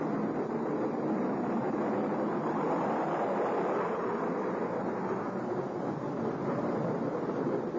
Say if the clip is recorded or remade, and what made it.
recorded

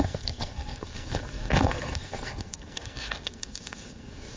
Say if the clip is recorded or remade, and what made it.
remade, codec, SNAC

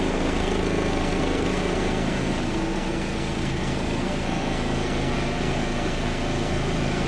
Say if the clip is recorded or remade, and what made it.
remade, codec, SNAC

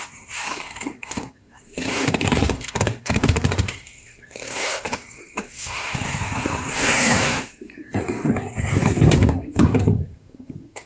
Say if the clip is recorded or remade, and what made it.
remade, codec, SNAC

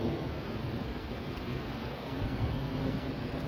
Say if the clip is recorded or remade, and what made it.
remade, codec, SNAC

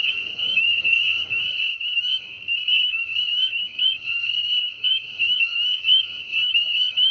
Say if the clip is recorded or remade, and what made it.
remade, codec, SNAC